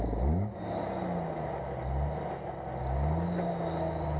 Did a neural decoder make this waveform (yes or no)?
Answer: no